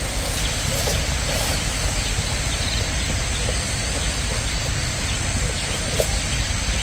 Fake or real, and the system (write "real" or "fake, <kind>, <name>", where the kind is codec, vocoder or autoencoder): real